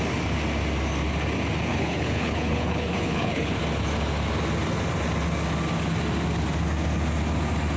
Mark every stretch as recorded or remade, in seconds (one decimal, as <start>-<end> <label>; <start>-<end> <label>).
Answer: 0.0-1.7 recorded; 1.7-3.6 remade; 3.6-7.8 recorded